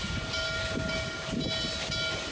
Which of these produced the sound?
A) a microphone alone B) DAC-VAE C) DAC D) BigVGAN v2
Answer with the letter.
A